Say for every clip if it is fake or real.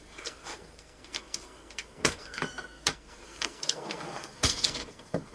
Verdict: fake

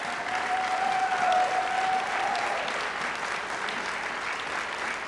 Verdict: real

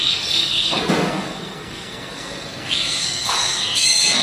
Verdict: fake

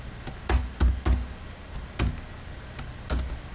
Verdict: real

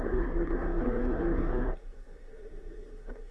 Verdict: fake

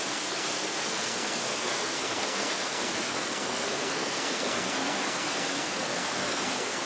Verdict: fake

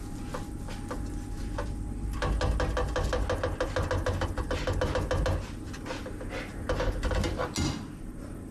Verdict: real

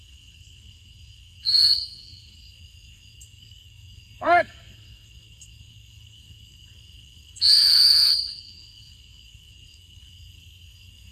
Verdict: fake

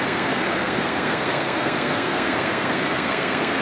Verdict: fake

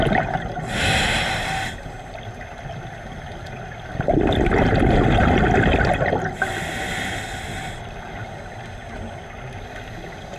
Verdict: real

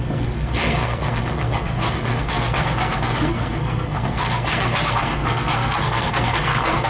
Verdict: fake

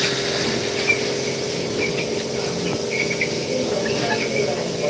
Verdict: real